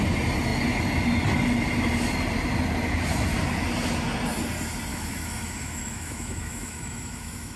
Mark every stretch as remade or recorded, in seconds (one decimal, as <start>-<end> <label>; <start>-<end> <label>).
0.0-4.9 recorded; 4.9-7.6 remade